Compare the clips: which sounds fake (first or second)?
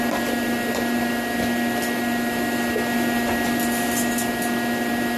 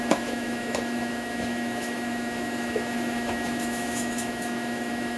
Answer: second